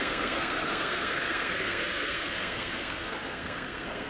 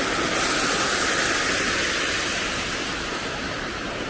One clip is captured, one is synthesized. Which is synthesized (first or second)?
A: first